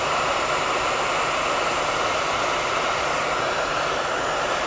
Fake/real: real